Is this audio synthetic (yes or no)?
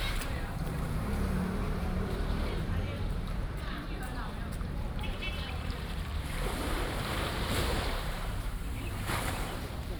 yes